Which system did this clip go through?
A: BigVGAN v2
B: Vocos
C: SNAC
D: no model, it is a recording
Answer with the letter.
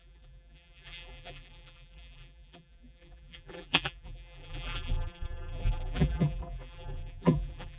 A